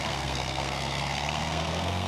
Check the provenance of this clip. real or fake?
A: fake